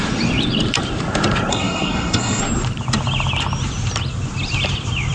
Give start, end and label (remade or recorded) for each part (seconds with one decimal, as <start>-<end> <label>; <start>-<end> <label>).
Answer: 0.0-1.5 recorded; 1.5-2.4 remade; 2.4-5.1 recorded